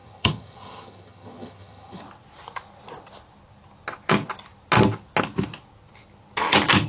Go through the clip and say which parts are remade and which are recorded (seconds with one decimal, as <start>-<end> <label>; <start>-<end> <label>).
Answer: 0.0-2.0 remade; 2.0-6.9 recorded